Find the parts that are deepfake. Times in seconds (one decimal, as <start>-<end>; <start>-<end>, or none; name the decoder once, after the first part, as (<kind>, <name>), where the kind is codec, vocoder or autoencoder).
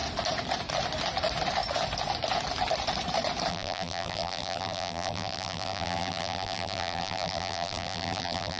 3.5-8.6 (vocoder, BigVGAN v2)